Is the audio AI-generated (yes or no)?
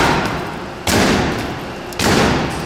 no